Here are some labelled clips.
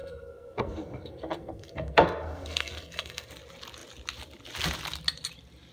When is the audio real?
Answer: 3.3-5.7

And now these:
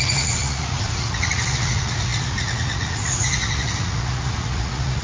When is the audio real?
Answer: none

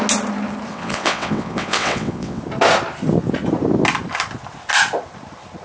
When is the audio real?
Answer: 0.0-0.7; 2.4-5.6

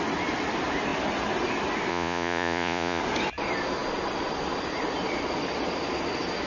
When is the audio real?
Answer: 0.0-1.9; 3.0-6.5

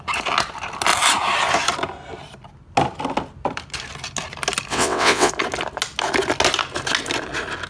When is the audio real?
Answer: 0.0-4.7; 5.3-7.7

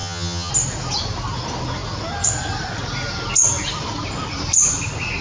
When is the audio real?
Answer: 0.5-5.2